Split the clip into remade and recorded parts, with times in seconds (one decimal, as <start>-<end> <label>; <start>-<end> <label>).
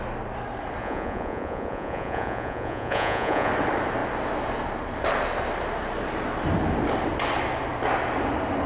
0.0-0.8 recorded; 0.8-3.5 remade; 3.5-8.7 recorded